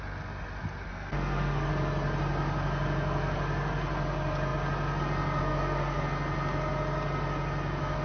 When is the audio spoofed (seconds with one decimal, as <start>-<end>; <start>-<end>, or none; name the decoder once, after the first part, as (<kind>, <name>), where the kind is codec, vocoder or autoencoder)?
0.9-1.7 (codec, SNAC); 5.4-6.0